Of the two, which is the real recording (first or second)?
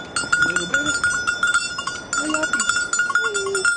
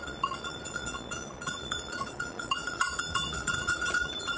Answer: first